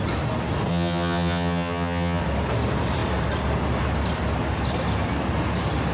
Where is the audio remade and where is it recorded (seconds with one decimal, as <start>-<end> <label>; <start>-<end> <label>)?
0.0-0.7 recorded; 0.7-2.2 remade; 2.2-5.9 recorded